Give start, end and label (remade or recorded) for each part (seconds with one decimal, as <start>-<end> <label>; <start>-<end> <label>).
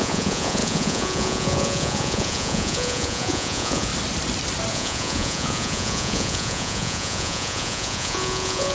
0.0-3.9 remade; 3.9-4.7 recorded; 4.7-8.7 remade